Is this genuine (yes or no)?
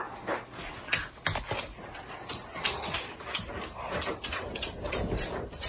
yes